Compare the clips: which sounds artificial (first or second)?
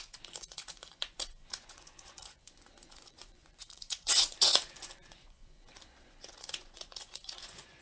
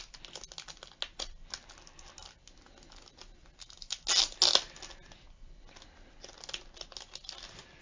first